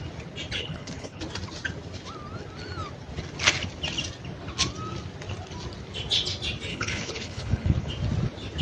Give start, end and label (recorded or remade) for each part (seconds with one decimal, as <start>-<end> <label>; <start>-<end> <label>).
0.0-0.6 recorded; 0.6-1.2 remade; 1.2-6.7 recorded; 6.7-7.9 remade; 7.9-8.6 recorded